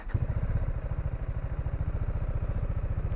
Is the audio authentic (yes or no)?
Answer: yes